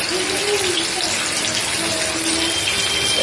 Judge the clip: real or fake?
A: real